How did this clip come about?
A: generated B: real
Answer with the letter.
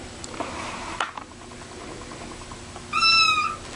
B